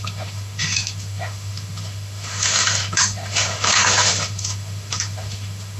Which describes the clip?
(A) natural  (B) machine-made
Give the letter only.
B